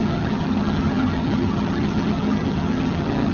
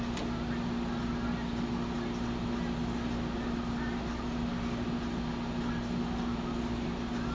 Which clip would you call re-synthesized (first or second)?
first